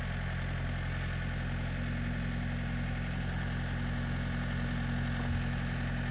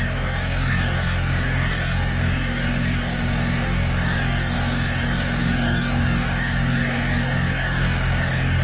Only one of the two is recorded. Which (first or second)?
first